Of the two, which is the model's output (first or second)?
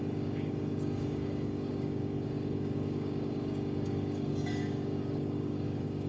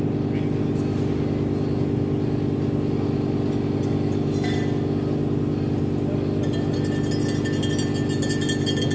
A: first